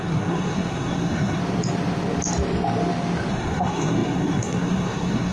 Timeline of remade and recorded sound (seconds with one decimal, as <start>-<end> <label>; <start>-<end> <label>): 0.0-1.4 remade; 1.4-3.3 recorded; 3.3-5.3 remade